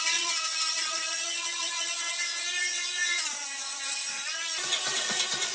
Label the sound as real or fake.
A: fake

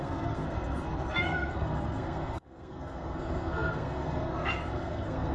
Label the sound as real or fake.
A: fake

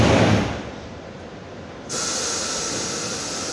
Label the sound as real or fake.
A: real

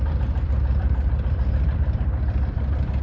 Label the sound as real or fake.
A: fake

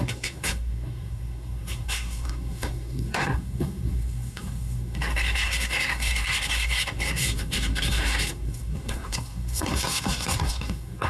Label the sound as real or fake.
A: fake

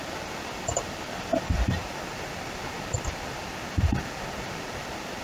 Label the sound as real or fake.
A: real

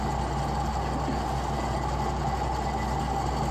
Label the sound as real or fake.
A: real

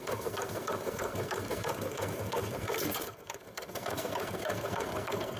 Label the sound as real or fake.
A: fake